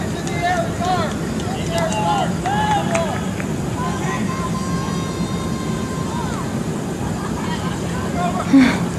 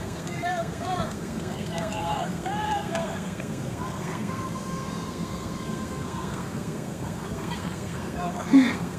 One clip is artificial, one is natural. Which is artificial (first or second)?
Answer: second